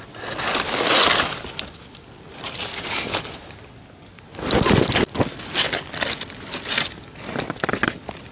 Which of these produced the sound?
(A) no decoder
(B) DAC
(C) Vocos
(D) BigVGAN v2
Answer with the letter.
A